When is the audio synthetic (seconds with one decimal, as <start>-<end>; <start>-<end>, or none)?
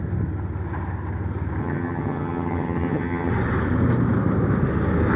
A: 1.6-3.3